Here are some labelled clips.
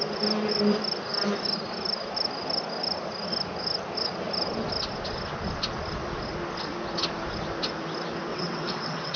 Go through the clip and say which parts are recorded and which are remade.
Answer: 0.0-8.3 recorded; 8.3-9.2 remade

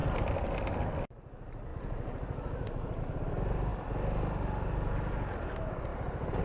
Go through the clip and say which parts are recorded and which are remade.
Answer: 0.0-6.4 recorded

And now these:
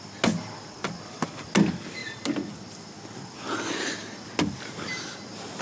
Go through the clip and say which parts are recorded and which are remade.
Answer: 0.0-5.6 recorded

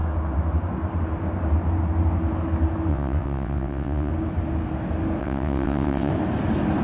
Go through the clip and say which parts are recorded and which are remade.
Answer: 0.0-2.9 recorded; 2.9-4.1 remade; 4.1-5.2 recorded; 5.2-6.1 remade; 6.1-6.8 recorded

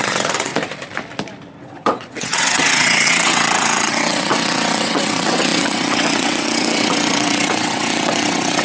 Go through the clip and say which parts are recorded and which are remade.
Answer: 0.0-0.5 remade; 0.5-1.6 recorded; 1.6-8.6 remade

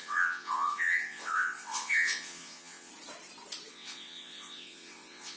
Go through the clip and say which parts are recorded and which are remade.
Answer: 0.0-2.9 remade; 2.9-3.7 recorded; 3.7-5.4 remade

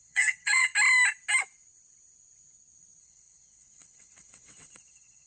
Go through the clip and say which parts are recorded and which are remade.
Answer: 0.0-0.7 remade; 0.7-3.0 recorded; 3.0-5.3 remade